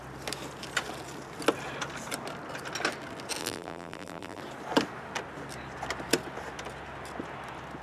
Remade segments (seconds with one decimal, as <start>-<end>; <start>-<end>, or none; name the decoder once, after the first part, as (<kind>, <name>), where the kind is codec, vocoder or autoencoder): 3.4-4.4 (vocoder, BigVGAN v2)